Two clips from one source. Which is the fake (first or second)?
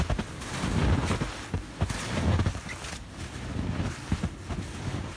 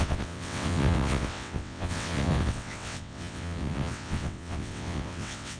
second